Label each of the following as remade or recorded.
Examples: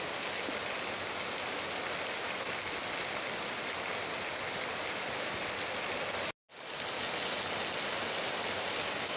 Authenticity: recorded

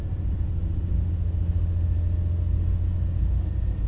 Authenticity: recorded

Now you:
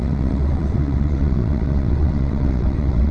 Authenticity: remade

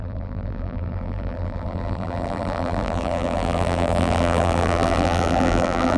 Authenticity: remade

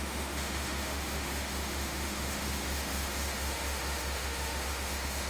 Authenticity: remade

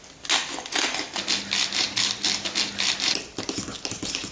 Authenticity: recorded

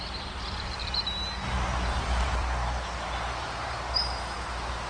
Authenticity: recorded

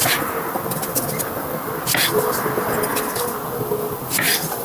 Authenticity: recorded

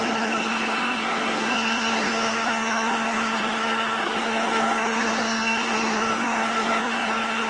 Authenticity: remade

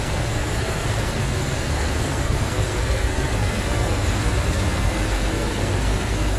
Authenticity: remade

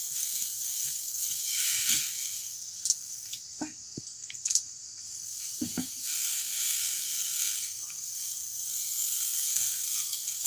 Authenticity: remade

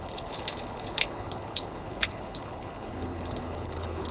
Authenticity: remade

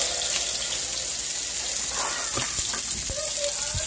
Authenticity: recorded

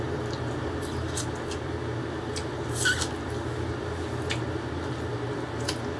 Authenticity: recorded